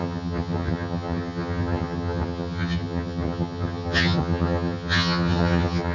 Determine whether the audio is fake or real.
fake